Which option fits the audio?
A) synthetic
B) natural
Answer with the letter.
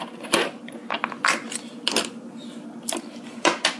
B